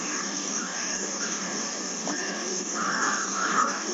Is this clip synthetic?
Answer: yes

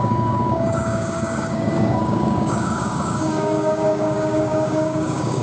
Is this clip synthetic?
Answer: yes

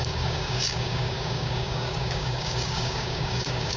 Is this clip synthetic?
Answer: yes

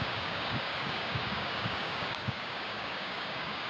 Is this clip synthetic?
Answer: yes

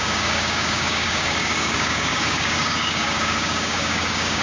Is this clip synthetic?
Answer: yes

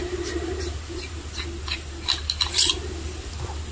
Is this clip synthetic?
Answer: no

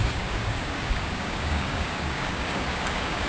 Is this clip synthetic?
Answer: yes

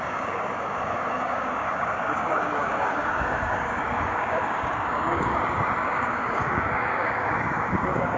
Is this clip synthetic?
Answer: yes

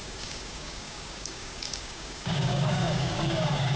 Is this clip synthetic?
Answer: yes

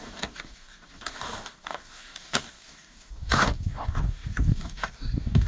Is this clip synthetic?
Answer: yes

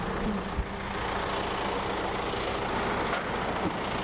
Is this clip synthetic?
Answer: no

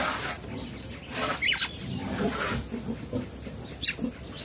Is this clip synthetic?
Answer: no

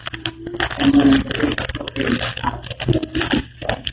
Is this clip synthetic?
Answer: no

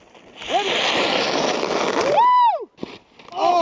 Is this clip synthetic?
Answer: no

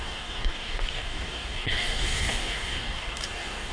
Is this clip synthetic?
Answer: yes